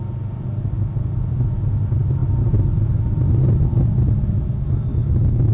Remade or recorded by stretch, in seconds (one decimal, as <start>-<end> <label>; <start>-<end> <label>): 0.0-4.9 recorded; 4.9-5.5 remade